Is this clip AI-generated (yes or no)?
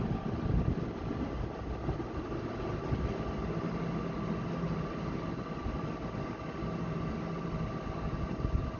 no